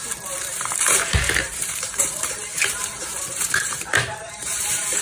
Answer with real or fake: fake